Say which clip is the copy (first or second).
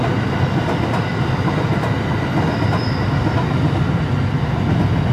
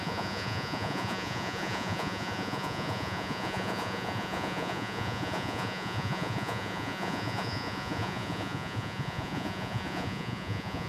second